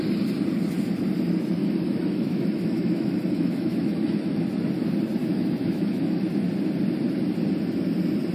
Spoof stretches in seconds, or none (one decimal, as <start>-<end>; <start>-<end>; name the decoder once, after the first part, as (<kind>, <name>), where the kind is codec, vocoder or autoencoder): 1.6-4.4 (autoencoder, DAC-VAE); 5.2-6.2